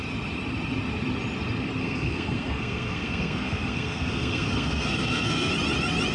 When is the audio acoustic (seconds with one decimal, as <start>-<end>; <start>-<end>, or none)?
0.0-1.8; 5.5-6.1

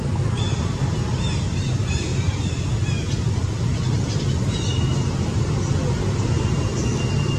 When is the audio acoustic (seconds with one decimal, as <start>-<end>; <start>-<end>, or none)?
0.0-7.4

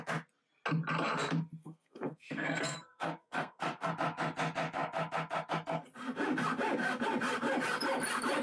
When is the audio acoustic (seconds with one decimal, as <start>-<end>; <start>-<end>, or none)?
0.0-1.6; 3.9-8.4

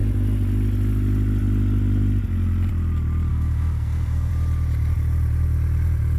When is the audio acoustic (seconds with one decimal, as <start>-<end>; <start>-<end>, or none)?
0.0-3.3; 4.3-6.2

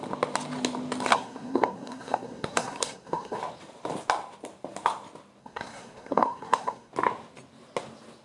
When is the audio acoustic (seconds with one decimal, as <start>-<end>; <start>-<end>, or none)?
0.0-1.1; 3.4-5.4; 6.9-8.2

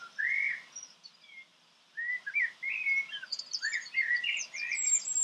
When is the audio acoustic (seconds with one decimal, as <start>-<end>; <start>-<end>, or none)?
0.0-5.2

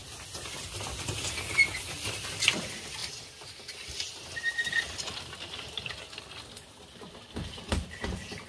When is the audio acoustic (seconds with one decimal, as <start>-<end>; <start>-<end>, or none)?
0.0-8.5

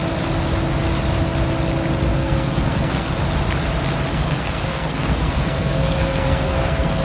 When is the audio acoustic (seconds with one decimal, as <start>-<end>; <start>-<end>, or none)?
0.0-2.1; 3.1-4.1